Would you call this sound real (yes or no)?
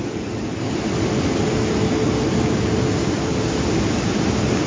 yes